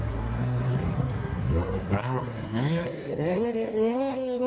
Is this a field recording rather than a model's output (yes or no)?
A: no